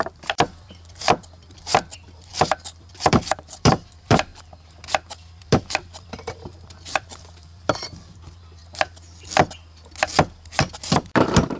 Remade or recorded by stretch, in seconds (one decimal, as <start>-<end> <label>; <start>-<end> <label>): 0.0-4.3 remade; 4.3-5.3 recorded; 5.3-8.6 remade; 8.6-10.8 recorded; 10.8-11.6 remade